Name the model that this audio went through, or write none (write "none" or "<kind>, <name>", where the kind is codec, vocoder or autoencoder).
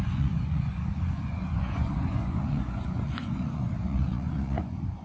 vocoder, Vocos